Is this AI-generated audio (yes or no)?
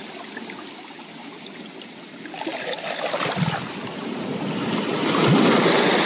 no